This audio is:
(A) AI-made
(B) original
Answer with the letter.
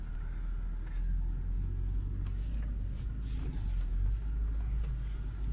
B